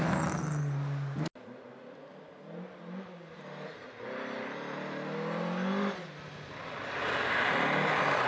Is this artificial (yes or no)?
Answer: no